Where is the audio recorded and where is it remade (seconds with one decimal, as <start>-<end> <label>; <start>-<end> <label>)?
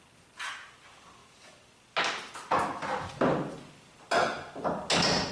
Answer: 0.0-5.3 recorded